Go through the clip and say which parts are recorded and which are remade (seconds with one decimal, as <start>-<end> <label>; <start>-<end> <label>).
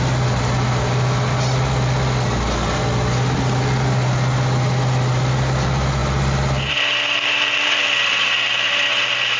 0.0-9.4 recorded